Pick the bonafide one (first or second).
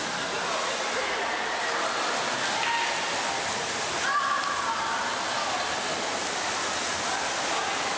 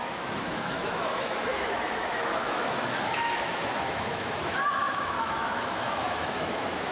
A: first